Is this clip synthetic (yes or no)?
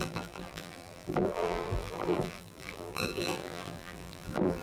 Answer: yes